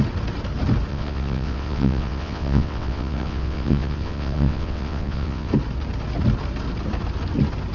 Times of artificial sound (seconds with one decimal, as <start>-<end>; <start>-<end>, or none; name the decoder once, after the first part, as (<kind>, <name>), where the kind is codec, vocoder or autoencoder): 0.9-5.5 (vocoder, WaveNeXt)